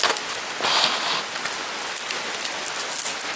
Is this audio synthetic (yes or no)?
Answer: no